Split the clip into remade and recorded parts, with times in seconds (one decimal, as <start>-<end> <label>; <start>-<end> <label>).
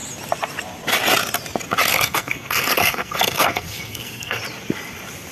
0.0-1.9 recorded; 1.9-4.4 remade; 4.4-5.3 recorded